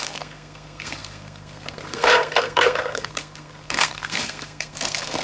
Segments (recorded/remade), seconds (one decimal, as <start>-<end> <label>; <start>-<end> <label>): 0.0-5.2 remade